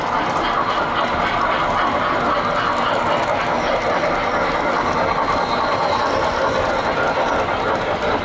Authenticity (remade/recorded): recorded